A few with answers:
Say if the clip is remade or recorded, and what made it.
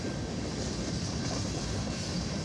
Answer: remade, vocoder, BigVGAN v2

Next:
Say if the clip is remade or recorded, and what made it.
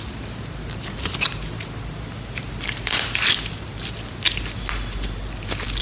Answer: recorded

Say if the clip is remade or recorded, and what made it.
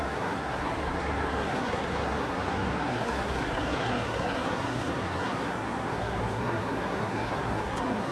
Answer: remade, codec, SNAC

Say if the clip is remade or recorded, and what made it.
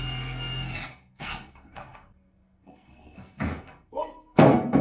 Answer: remade, codec, SNAC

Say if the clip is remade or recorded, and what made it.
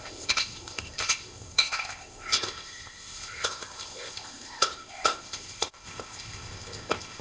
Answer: remade, codec, ZipCodec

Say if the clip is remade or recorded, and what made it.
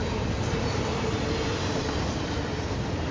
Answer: recorded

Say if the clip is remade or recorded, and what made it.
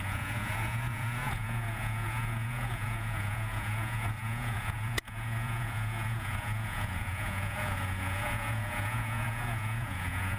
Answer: remade, vocoder, Vocos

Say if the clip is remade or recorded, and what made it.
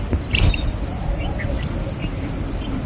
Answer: recorded